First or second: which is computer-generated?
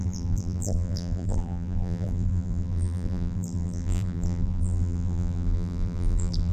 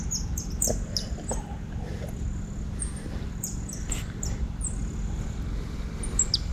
first